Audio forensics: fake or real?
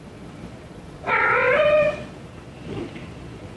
fake